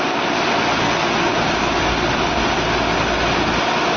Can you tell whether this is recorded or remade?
recorded